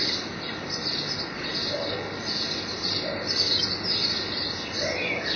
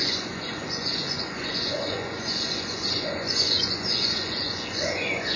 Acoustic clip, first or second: first